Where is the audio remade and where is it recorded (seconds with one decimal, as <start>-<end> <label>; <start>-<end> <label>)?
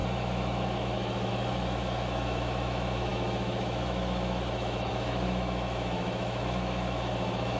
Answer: 0.0-7.6 remade